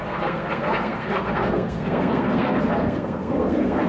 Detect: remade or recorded remade